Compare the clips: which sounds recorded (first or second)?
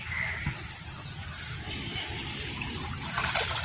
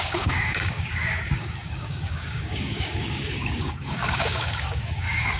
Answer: first